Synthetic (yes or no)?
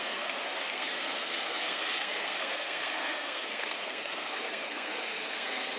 yes